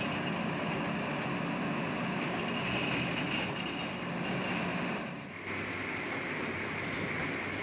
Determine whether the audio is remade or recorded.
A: recorded